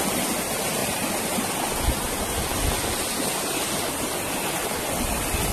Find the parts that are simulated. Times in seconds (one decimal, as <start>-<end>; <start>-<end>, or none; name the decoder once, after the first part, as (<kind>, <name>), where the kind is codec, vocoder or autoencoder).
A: 0.8-1.5 (vocoder, BigVGAN v2)